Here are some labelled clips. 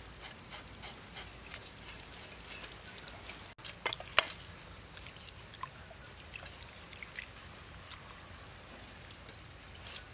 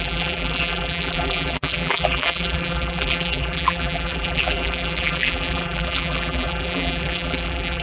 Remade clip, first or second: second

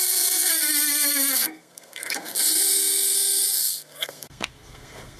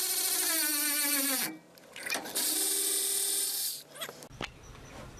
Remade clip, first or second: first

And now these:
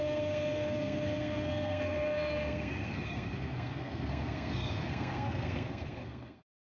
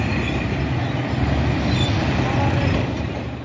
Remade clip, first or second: first